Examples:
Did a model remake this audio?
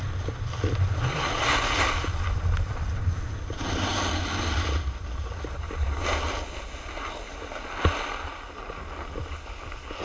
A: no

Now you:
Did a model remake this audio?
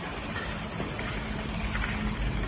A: no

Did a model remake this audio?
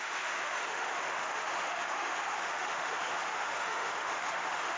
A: yes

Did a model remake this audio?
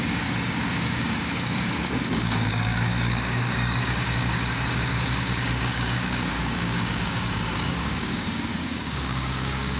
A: yes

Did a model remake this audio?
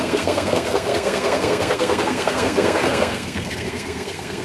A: yes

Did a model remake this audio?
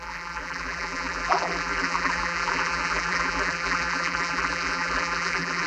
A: yes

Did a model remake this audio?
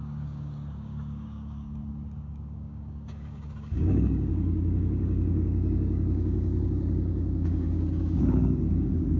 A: yes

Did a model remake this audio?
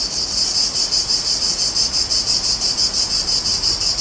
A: no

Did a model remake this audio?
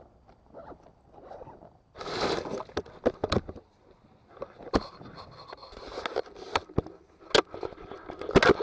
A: no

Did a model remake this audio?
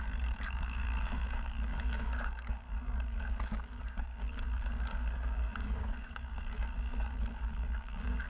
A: yes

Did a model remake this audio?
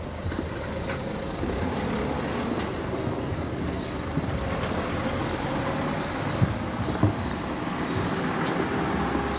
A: no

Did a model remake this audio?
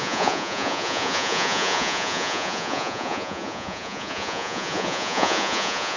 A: yes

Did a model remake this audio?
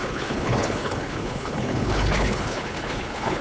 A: yes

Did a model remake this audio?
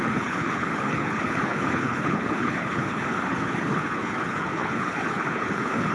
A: yes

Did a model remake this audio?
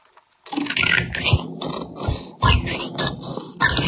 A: no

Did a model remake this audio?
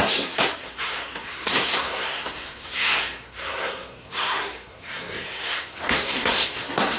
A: yes